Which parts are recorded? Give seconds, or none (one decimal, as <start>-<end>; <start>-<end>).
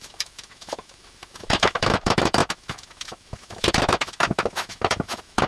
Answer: none